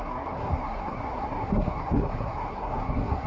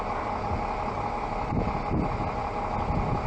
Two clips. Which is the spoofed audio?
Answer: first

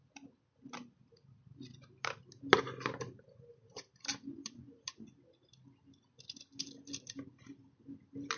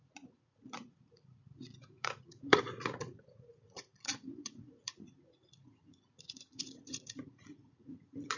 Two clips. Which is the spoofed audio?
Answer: second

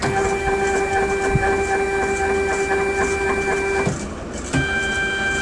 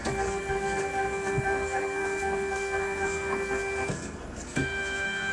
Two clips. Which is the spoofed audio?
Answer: second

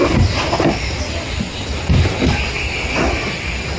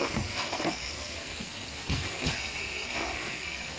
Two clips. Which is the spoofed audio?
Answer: second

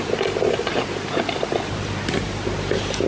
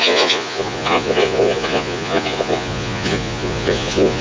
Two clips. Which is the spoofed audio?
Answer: second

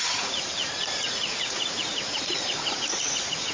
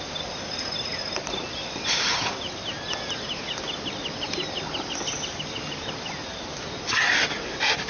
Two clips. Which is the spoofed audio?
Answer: first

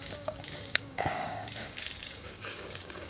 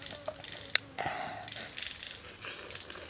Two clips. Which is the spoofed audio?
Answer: first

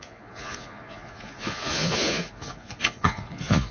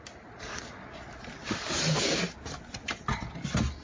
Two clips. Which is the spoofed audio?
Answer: first